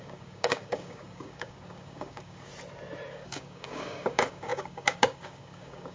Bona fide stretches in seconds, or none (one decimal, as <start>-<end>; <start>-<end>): 2.5-3.1

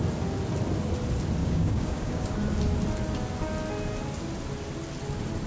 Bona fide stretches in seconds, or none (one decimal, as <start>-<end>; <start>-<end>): 0.0-1.4; 2.3-5.5

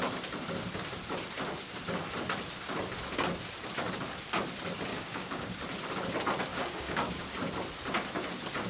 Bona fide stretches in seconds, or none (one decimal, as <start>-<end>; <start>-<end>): 0.0-4.9; 5.6-6.5; 7.2-8.7